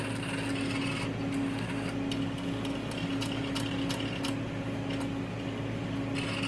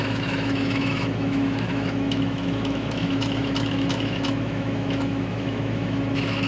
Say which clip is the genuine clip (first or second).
first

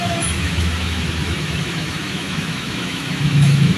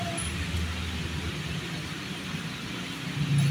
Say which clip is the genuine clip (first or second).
second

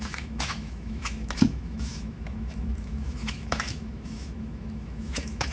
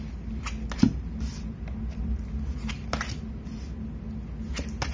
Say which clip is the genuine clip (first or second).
second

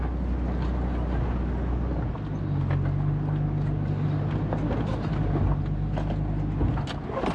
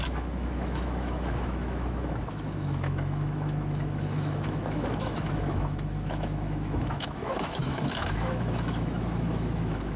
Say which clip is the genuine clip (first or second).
first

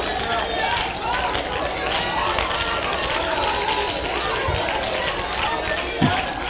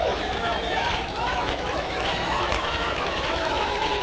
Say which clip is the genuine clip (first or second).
first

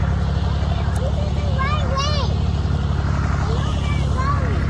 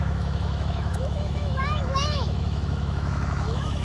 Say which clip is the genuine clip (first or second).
first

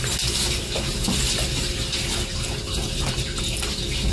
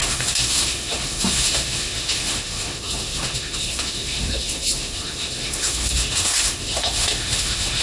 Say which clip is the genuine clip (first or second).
first